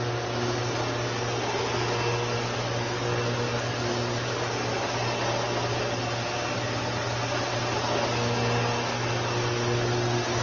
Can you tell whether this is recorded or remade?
recorded